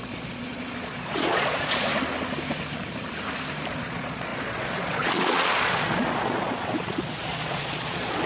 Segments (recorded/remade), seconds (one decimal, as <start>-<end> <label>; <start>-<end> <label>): 0.0-1.9 remade; 1.9-3.7 recorded; 3.7-8.3 remade